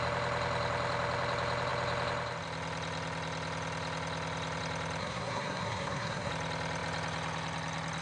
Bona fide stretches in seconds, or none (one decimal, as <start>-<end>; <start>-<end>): 0.0-5.0; 6.3-8.0

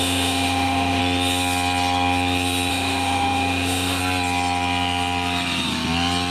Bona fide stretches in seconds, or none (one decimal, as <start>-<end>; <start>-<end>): 1.0-2.7; 4.0-6.3

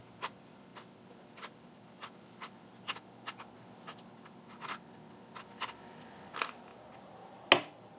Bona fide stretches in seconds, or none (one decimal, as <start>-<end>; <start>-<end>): 0.0-8.0

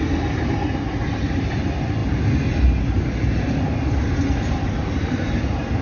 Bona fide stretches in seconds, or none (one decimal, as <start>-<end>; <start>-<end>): 0.0-5.8

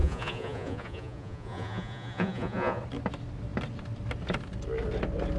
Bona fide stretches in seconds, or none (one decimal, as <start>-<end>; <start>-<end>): 2.8-5.4